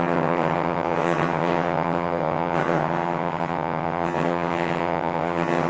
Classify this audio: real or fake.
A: fake